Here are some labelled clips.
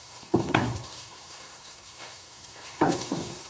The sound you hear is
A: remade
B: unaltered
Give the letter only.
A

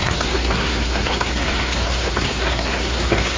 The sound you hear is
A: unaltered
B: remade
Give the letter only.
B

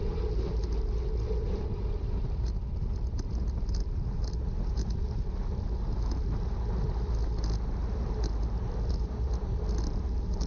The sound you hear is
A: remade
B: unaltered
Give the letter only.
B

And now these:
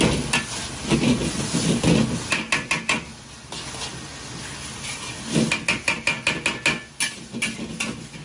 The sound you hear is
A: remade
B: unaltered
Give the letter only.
B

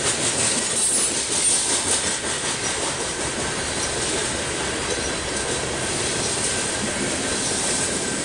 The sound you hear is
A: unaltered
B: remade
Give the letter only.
A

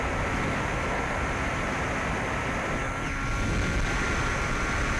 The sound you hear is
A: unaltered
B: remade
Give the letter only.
A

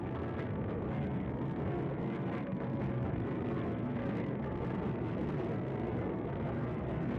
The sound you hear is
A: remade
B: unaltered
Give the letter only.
A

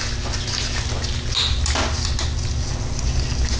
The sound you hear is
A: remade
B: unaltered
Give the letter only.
B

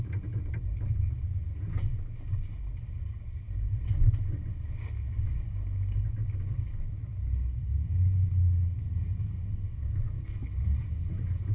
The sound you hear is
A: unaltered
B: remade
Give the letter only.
A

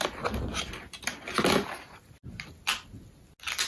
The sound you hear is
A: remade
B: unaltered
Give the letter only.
B